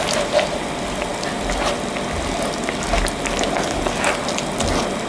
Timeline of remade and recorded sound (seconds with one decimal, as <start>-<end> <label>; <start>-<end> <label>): 0.0-5.1 recorded